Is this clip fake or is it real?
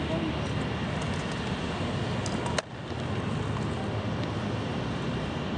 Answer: real